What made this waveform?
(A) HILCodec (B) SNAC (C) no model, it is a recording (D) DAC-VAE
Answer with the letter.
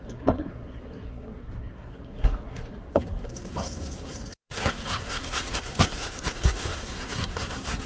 B